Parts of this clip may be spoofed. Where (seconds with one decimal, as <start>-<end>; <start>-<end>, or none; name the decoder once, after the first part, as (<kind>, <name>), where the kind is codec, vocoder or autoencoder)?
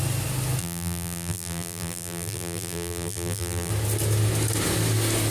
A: 0.6-3.7 (vocoder, BigVGAN v2)